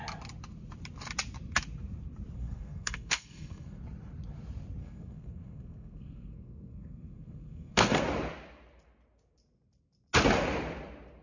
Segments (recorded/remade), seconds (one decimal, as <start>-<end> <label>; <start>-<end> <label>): 0.0-2.4 recorded; 2.4-3.8 remade; 3.8-4.8 recorded; 4.8-8.0 remade; 8.0-11.2 recorded